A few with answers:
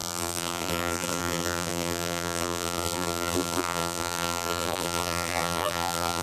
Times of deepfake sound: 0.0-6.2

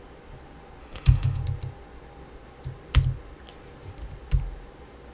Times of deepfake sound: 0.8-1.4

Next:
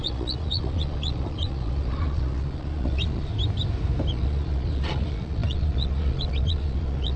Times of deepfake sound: 0.0-3.3; 4.1-7.2

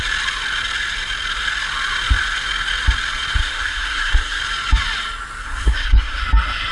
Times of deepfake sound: 3.4-4.4; 5.4-6.2

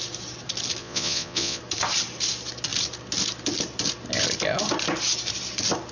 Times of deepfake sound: 0.8-1.6

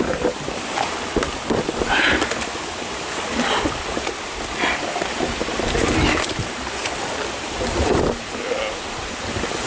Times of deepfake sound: none